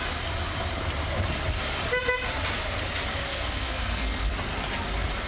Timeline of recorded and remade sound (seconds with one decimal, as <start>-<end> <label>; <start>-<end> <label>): 0.0-3.3 recorded; 3.3-4.3 remade; 4.3-5.3 recorded